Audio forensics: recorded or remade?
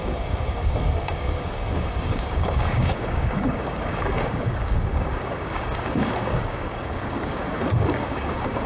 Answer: remade